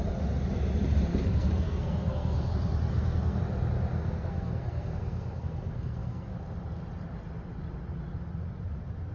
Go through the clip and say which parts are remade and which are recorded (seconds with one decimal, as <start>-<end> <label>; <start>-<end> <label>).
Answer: 0.0-1.1 recorded; 1.1-2.5 remade; 2.5-2.9 recorded; 2.9-3.4 remade; 3.4-3.9 recorded; 3.9-6.3 remade; 6.3-9.1 recorded